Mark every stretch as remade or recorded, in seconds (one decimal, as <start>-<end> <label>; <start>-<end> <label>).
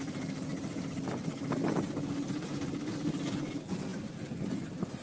0.0-5.0 recorded